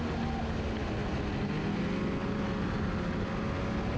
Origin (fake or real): real